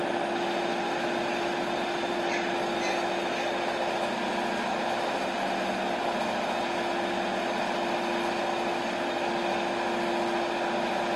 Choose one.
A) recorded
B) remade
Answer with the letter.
A